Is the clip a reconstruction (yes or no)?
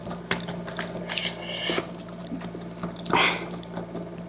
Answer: no